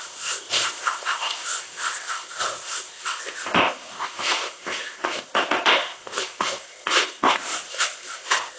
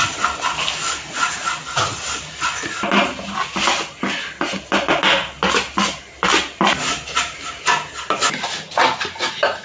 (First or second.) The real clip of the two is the second